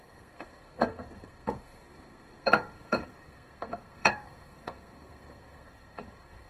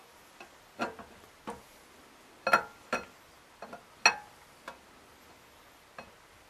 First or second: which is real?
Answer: second